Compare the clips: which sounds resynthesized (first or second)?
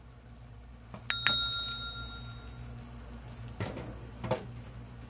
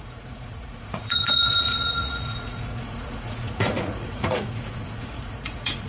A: second